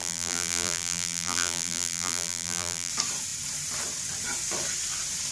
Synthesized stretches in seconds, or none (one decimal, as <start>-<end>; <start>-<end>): 0.0-2.9

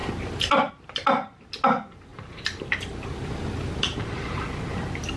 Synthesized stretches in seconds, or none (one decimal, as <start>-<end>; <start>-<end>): 0.0-0.7; 2.1-3.7

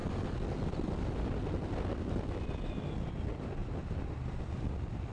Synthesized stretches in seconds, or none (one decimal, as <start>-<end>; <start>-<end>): 0.0-3.1; 3.6-5.1

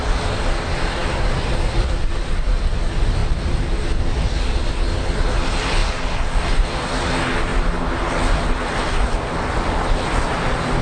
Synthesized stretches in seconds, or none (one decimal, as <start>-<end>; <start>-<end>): 1.0-2.5

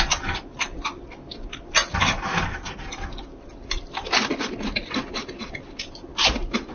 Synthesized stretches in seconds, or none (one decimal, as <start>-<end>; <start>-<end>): 1.8-5.1

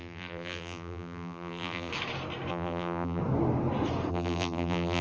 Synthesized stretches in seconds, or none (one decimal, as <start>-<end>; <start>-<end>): 0.0-1.9; 2.5-3.2; 4.1-5.0

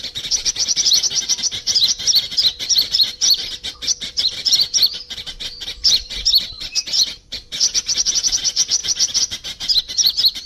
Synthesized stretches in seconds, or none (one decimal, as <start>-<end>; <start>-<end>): 0.0-10.5

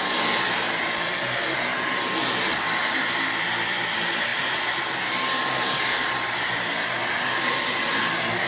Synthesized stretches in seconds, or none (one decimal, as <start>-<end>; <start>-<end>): 4.3-4.8; 7.0-7.7